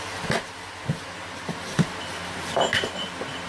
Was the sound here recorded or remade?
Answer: recorded